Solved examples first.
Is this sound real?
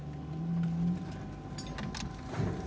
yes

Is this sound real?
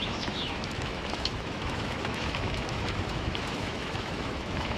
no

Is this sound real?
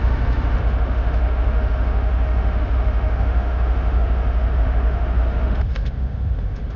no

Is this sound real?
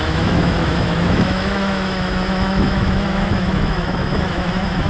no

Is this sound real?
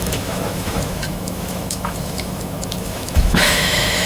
no